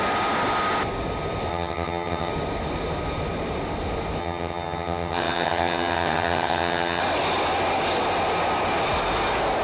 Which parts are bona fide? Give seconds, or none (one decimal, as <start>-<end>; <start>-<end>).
0.0-1.5; 2.3-4.2; 7.0-9.6